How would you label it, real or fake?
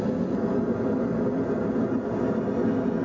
real